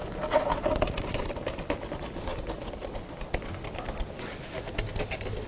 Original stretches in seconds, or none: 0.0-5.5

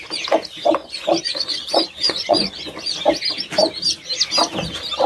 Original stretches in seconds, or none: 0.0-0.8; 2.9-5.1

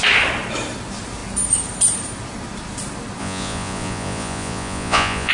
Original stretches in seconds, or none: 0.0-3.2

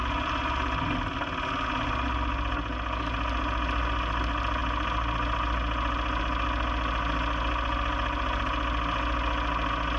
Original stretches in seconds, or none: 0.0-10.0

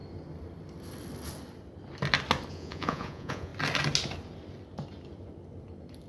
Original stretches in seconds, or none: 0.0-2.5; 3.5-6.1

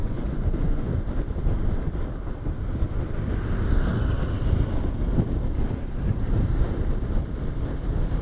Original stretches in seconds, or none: 0.9-8.2